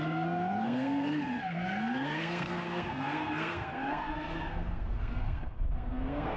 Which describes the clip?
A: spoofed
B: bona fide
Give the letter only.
A